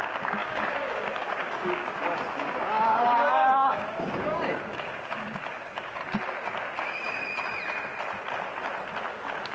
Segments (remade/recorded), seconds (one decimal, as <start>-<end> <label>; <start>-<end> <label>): 0.0-6.0 remade; 6.0-6.8 recorded; 6.8-7.2 remade; 7.2-9.1 recorded; 9.1-9.5 remade